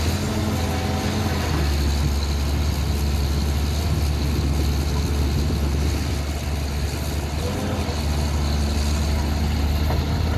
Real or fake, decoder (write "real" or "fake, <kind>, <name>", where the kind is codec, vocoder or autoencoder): real